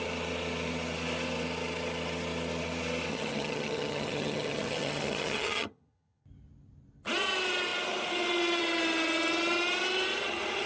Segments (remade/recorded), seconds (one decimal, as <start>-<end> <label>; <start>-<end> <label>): 0.0-3.1 recorded; 3.1-6.2 remade; 6.2-10.7 recorded